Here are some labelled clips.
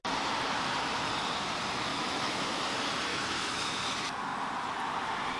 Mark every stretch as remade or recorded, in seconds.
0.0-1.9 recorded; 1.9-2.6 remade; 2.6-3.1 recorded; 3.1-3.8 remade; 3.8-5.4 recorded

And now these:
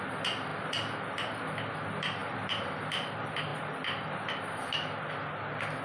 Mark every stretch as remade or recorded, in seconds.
0.0-5.8 recorded

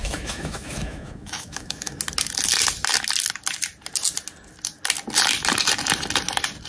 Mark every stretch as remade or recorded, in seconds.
0.0-1.9 remade; 1.9-6.7 recorded

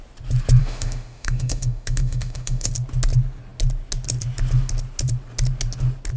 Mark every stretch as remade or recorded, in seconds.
0.0-0.6 recorded; 0.6-2.7 remade; 2.7-6.2 recorded

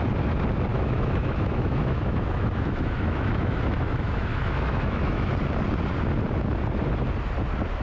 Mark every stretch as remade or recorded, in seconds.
0.0-0.7 recorded; 0.7-5.3 remade; 5.3-7.8 recorded

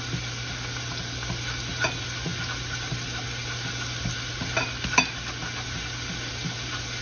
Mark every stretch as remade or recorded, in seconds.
0.0-7.0 recorded

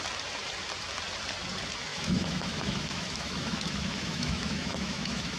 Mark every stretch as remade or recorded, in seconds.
0.0-1.9 recorded; 1.9-5.4 remade